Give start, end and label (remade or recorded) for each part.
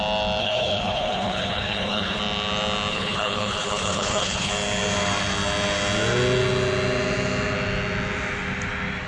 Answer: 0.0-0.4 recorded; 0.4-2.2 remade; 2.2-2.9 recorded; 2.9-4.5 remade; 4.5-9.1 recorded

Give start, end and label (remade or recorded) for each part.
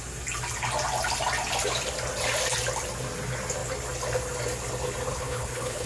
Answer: 0.0-5.1 recorded; 5.1-5.9 remade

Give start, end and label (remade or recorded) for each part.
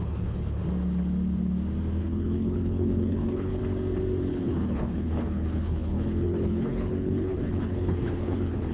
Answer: 0.0-0.6 remade; 0.6-2.0 recorded; 2.0-3.6 remade; 3.6-4.3 recorded; 4.3-8.7 remade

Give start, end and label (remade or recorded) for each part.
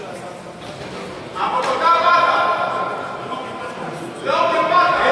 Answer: 0.0-5.1 recorded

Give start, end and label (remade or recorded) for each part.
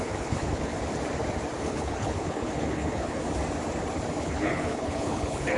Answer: 0.0-0.7 remade; 0.7-1.6 recorded; 1.6-3.2 remade; 3.2-4.2 recorded; 4.2-5.6 remade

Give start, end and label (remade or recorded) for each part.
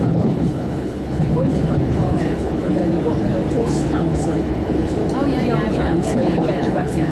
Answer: 0.0-2.8 remade; 2.8-3.5 recorded; 3.5-5.0 remade; 5.0-5.7 recorded; 5.7-7.1 remade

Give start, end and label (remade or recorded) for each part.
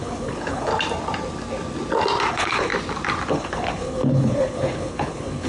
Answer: 0.0-0.7 remade; 0.7-2.3 recorded; 2.3-2.7 remade; 2.7-3.3 recorded; 3.3-5.5 remade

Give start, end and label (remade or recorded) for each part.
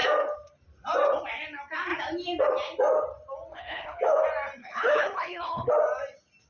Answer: 0.0-3.5 recorded; 3.5-4.0 remade; 4.0-4.6 recorded; 4.6-5.7 remade; 5.7-6.5 recorded